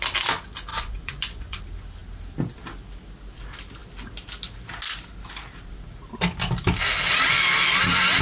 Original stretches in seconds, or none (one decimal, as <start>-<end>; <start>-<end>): 0.0-0.7; 1.6-8.2